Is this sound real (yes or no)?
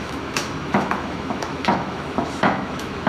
no